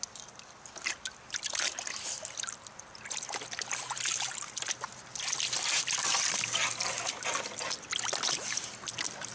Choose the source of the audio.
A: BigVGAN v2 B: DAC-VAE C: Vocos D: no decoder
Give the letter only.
D